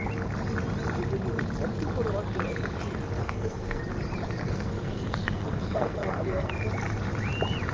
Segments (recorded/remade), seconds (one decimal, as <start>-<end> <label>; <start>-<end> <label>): 0.0-3.2 recorded; 3.2-3.8 remade; 3.8-4.4 recorded; 4.4-6.5 remade; 6.5-7.7 recorded